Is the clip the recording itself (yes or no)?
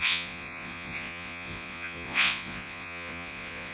no